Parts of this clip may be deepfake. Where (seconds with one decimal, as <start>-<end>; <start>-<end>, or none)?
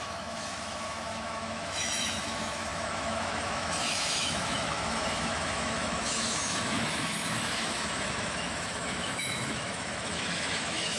0.0-11.0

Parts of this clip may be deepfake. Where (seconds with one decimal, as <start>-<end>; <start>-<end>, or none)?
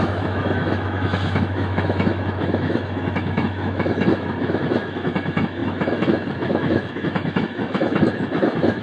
0.0-8.8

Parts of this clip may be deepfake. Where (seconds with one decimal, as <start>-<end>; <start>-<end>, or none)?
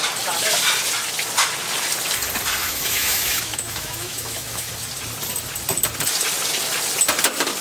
2.6-4.7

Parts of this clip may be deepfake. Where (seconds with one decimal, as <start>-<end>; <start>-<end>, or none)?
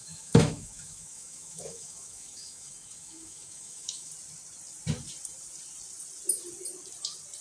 0.0-4.1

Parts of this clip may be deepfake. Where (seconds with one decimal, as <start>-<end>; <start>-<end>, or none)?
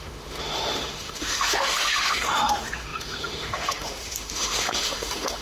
0.0-5.4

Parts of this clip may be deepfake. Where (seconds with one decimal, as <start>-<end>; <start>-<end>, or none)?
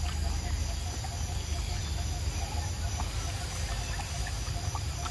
none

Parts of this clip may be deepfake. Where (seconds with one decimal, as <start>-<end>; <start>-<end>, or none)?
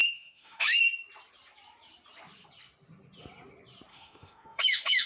0.0-0.8; 3.9-5.1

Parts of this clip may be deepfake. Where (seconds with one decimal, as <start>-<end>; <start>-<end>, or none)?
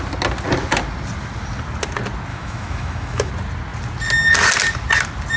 2.3-3.3